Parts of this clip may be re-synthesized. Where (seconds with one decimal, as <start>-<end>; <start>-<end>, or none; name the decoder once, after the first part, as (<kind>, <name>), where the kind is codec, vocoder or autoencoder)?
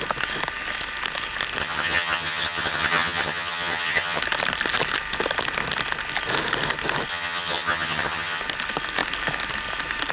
1.6-4.2 (vocoder, HiFi-GAN); 7.1-8.4